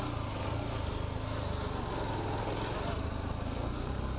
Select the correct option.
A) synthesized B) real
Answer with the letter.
B